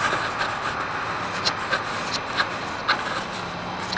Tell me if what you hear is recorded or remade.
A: recorded